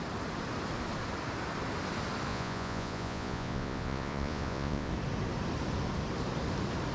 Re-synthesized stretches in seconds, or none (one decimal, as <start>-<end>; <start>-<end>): 2.3-4.9